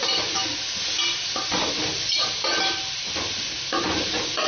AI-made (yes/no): no